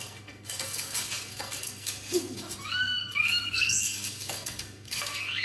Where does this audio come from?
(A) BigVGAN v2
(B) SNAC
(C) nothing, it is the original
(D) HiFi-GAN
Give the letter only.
B